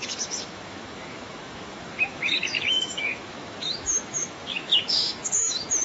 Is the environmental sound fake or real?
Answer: fake